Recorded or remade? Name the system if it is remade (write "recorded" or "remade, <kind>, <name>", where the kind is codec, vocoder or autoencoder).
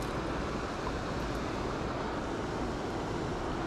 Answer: recorded